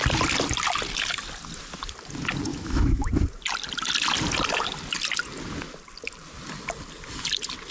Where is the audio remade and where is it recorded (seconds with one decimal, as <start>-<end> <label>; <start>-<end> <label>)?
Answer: 0.0-2.5 recorded; 2.5-3.1 remade; 3.1-7.7 recorded